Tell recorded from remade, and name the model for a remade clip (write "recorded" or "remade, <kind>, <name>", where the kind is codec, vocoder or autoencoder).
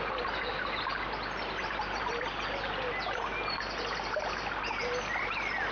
recorded